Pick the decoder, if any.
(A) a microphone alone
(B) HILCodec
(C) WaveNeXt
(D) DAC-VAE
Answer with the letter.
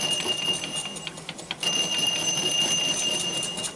A